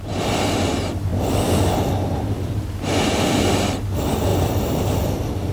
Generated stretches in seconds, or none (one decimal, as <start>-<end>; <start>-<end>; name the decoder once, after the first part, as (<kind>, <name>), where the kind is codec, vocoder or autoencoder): 0.0-1.1 (vocoder, BigVGAN v2); 2.4-5.5